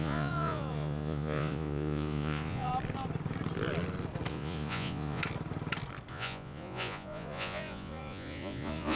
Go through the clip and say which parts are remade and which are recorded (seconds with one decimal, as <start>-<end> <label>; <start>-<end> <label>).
0.0-2.7 remade; 2.7-4.3 recorded; 4.3-5.2 remade; 5.2-6.1 recorded; 6.1-9.0 remade